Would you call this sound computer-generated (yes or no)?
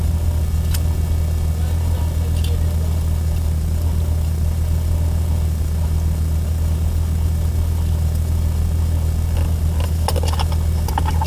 no